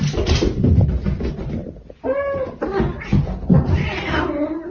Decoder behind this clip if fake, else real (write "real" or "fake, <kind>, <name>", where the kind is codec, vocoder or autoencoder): real